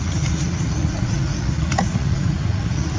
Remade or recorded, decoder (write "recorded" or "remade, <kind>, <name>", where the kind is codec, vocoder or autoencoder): remade, vocoder, Vocos